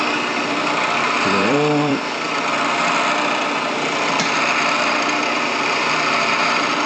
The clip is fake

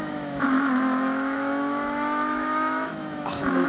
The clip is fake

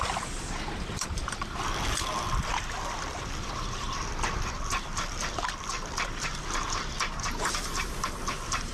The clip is fake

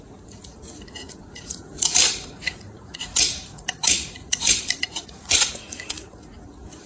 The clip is fake